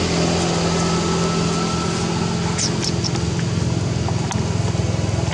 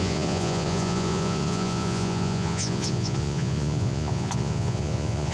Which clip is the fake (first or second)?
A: second